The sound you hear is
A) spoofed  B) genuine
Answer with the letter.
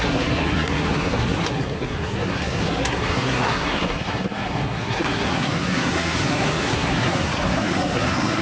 A